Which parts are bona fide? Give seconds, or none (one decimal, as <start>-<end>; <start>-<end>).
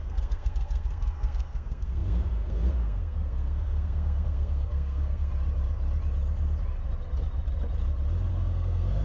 5.3-8.3